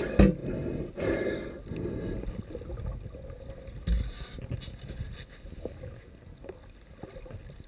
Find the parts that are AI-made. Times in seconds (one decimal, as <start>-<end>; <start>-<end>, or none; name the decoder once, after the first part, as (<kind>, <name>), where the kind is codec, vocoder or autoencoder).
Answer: none